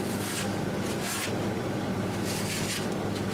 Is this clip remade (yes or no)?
no